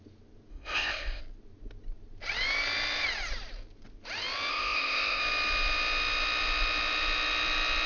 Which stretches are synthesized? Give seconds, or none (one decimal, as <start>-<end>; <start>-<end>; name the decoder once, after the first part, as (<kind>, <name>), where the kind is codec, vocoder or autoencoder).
0.5-1.2 (codec, ZipCodec); 4.5-5.2